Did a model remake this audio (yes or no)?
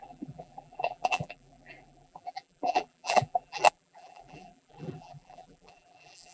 yes